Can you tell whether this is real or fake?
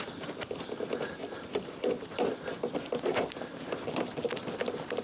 fake